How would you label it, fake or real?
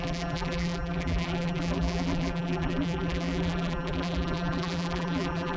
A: fake